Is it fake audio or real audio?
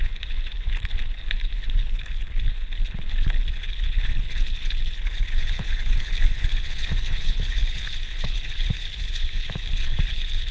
fake